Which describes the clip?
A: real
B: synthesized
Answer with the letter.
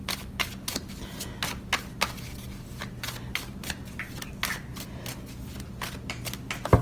A